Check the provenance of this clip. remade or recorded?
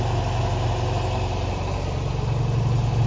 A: recorded